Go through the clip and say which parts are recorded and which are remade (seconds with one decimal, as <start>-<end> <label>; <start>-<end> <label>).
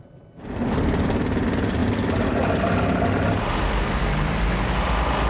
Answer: 0.0-5.3 recorded